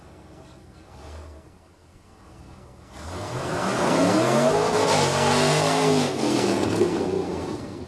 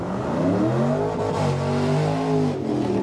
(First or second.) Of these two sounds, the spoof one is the first